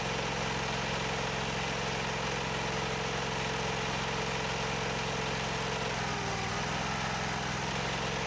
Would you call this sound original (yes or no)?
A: yes